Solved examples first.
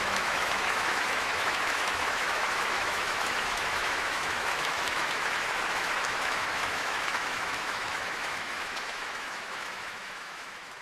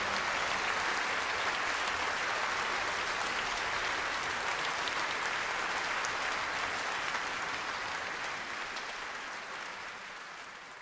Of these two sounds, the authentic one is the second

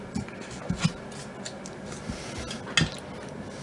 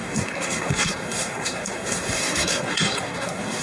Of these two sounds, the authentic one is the first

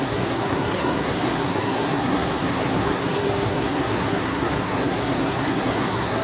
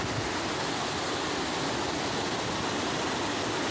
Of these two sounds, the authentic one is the second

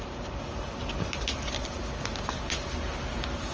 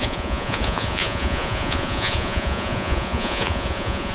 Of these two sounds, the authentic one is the first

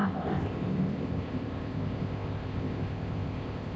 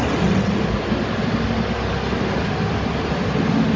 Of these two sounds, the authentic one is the second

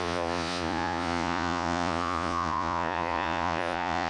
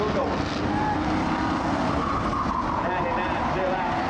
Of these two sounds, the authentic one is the second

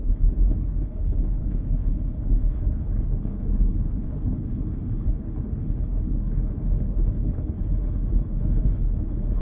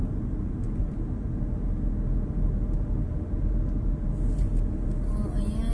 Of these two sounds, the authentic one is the second